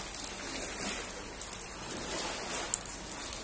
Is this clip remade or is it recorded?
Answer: recorded